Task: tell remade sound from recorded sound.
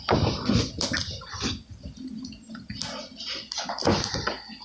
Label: recorded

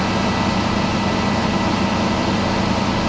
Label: recorded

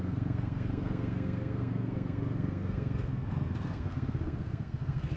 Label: remade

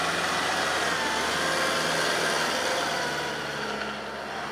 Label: recorded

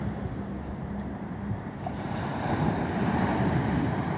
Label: remade